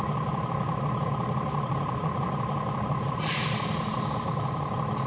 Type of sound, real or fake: fake